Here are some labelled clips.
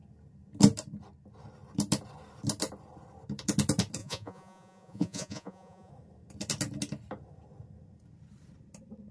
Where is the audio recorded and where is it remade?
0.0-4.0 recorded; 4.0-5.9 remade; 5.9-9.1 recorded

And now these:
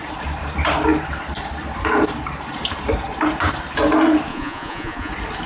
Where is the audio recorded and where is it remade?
0.0-4.3 recorded; 4.3-5.1 remade; 5.1-5.5 recorded